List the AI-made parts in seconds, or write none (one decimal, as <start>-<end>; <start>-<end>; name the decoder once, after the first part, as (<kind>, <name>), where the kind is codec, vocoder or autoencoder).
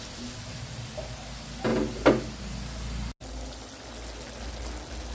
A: none